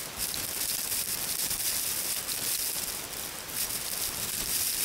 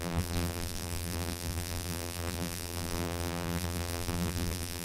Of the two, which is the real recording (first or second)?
first